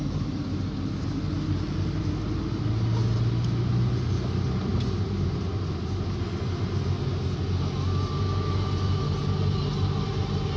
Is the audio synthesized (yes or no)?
no